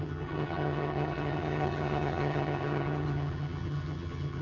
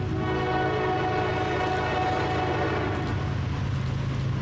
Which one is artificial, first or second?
first